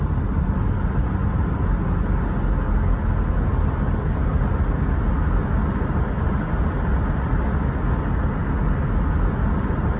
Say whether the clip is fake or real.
real